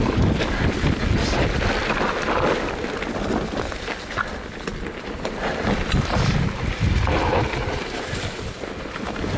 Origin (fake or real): real